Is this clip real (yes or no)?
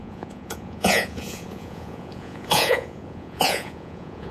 no